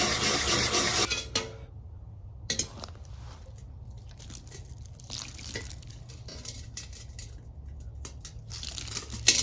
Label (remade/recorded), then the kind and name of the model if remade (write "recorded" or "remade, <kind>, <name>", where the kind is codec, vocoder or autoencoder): recorded